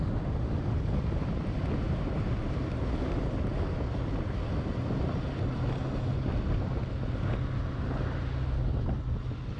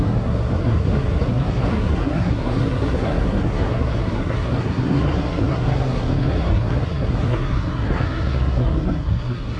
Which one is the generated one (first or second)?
second